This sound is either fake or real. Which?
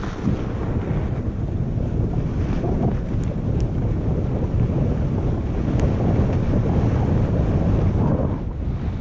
real